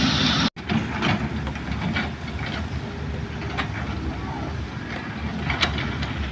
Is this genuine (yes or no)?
yes